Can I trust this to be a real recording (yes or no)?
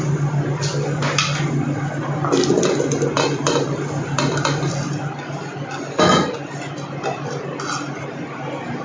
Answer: yes